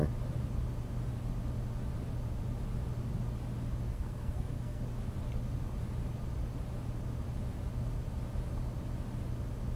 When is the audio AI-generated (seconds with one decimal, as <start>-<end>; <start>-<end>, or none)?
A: 3.9-4.8